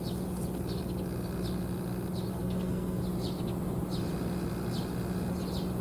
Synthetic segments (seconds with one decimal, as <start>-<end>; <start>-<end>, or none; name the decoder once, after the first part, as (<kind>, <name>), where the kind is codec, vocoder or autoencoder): 2.3-3.0 (codec, SNAC)